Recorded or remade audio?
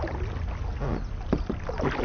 recorded